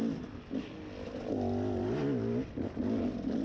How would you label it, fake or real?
real